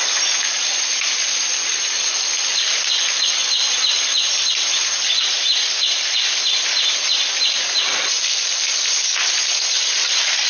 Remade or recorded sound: recorded